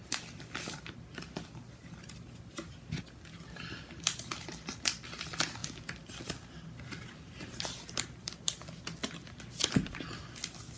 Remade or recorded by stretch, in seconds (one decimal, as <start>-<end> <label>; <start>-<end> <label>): 0.0-10.8 recorded